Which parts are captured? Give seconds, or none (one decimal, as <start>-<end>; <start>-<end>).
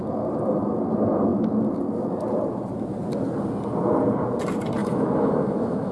0.0-4.8